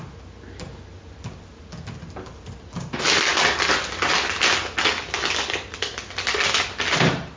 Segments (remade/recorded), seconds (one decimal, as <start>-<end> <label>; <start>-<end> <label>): 0.0-7.4 recorded